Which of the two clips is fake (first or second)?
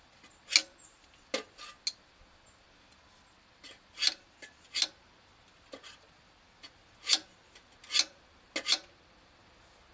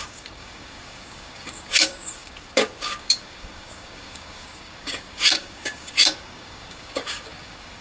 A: second